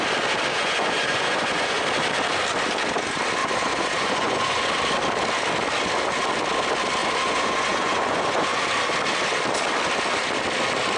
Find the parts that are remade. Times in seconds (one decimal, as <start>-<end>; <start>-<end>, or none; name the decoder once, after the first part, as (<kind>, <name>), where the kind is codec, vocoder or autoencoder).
0.5-1.8 (vocoder, Vocos); 3.4-4.7; 7.0-8.6